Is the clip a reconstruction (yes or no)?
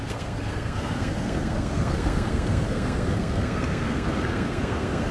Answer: yes